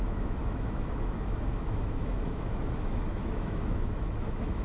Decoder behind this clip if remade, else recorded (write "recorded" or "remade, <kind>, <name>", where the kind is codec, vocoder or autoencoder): remade, autoencoder, DAC-VAE